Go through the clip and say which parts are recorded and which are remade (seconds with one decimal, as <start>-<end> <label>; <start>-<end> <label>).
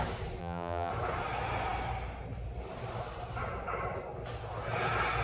0.0-0.4 recorded; 0.4-0.9 remade; 0.9-5.2 recorded